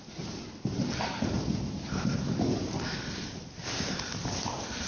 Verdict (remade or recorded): recorded